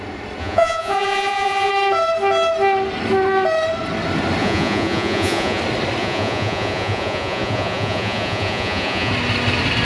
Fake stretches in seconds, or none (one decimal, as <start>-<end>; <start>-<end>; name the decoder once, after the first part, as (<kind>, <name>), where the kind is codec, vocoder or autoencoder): 0.4-1.7 (vocoder, Vocos); 4.4-5.6; 6.0-9.1

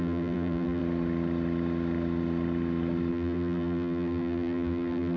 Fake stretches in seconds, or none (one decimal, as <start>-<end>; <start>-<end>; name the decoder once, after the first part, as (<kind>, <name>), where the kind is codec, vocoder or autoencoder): 0.0-0.8 (vocoder, BigVGAN v2); 3.1-5.2

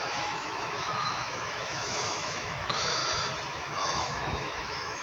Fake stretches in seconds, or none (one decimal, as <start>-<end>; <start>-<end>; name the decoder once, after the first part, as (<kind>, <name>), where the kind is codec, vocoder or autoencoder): 0.0-3.0 (autoencoder, DAC-VAE); 3.5-5.0

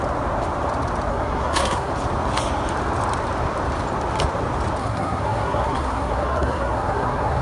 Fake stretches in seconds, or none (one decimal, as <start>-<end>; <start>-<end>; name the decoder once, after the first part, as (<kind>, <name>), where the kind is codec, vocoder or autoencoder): 1.1-1.9 (codec, SNAC); 4.8-7.4

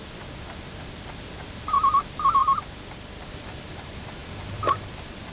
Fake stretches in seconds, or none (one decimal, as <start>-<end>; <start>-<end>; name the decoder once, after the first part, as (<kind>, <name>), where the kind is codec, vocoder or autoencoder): 0.7-2.4 (vocoder, BigVGAN v2); 3.3-4.2; 4.7-5.3

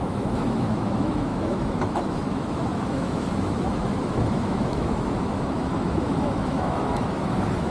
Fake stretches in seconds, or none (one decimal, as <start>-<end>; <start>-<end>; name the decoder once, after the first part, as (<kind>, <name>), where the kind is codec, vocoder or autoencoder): 0.0-7.7 (autoencoder, DAC-VAE)